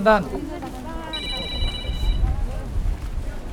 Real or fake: real